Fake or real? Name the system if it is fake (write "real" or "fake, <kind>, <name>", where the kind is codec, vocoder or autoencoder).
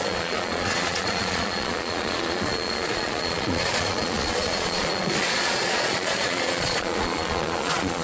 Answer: fake, vocoder, Vocos